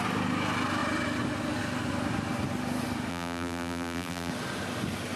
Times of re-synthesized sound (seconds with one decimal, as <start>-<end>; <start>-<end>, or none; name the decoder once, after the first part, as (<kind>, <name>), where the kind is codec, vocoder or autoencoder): 3.1-4.3 (vocoder, BigVGAN v2)